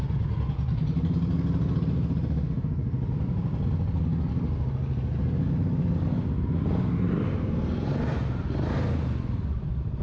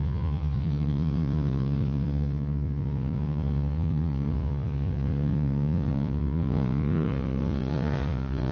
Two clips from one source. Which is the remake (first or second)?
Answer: second